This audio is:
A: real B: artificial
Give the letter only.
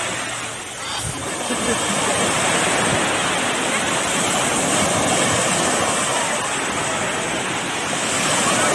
A